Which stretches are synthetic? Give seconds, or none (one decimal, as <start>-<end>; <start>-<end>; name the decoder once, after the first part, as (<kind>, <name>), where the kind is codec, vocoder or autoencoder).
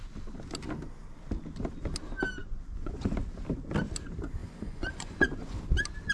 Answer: 2.4-3.1 (vocoder, Vocos); 4.4-5.6